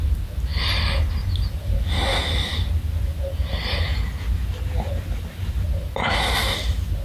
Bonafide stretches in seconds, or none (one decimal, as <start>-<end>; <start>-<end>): 0.0-7.0